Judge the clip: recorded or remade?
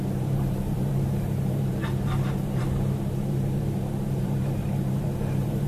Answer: remade